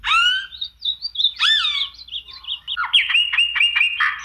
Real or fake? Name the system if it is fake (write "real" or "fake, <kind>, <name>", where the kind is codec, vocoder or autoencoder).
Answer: real